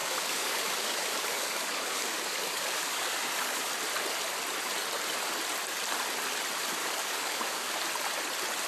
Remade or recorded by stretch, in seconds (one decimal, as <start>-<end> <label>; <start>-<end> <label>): 0.0-3.7 remade; 3.7-6.8 recorded; 6.8-7.7 remade; 7.7-8.7 recorded